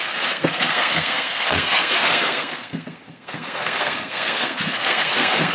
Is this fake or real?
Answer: fake